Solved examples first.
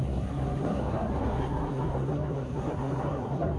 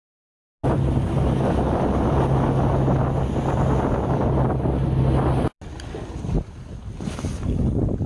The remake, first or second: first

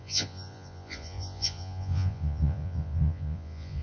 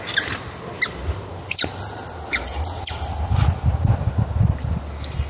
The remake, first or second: first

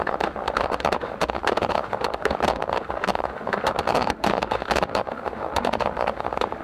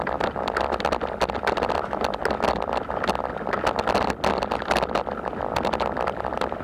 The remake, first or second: first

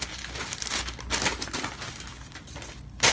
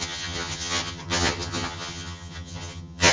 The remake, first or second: second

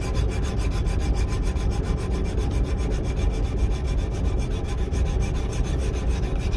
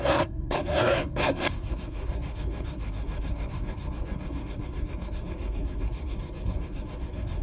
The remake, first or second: second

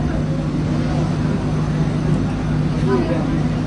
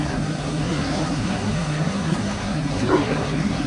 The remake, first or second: second